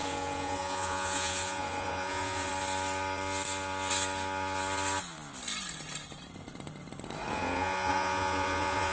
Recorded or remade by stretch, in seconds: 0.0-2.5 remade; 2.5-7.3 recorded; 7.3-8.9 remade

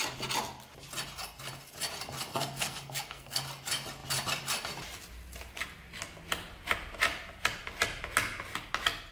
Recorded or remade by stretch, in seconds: 0.0-2.3 recorded; 2.3-3.4 remade; 3.4-9.1 recorded

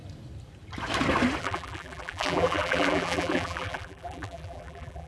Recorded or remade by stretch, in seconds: 0.0-1.4 recorded; 1.4-5.1 remade

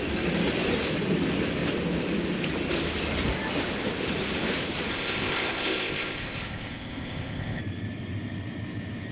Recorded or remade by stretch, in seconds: 0.0-4.9 recorded; 4.9-7.6 remade; 7.6-9.1 recorded

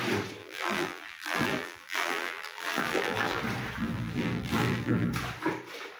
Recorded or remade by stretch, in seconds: 0.0-0.4 recorded; 0.4-3.4 remade; 3.4-3.8 recorded; 3.8-5.1 remade; 5.1-6.0 recorded